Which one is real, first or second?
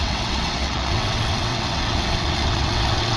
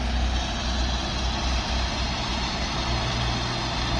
second